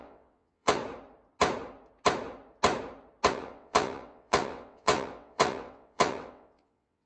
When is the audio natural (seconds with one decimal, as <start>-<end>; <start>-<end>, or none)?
0.8-3.3